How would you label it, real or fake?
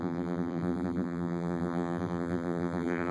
fake